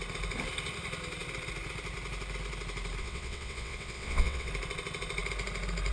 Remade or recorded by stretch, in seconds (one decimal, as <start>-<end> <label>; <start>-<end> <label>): 0.0-3.0 recorded; 3.0-4.5 remade; 4.5-5.9 recorded

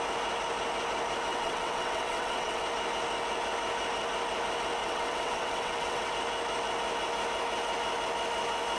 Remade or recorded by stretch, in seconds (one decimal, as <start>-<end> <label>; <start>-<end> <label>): 0.0-1.3 recorded; 1.3-2.6 remade; 2.6-4.8 recorded; 4.8-6.1 remade; 6.1-8.8 recorded

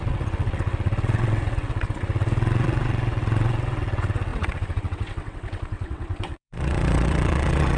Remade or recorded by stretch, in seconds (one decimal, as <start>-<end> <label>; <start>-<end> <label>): 0.0-7.8 remade

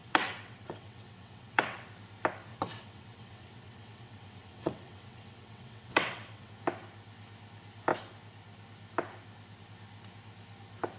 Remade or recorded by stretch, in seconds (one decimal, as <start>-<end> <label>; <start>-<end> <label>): 0.0-1.9 remade; 1.9-2.5 recorded; 2.5-6.5 remade; 6.5-11.0 recorded

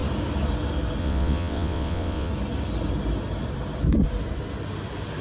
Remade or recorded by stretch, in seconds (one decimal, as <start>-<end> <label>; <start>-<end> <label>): 0.0-1.0 recorded; 1.0-2.3 remade; 2.3-5.2 recorded

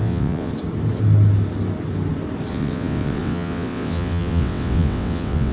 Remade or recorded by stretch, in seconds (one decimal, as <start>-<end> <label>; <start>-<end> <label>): 0.0-0.5 remade; 0.5-2.5 recorded; 2.5-5.5 remade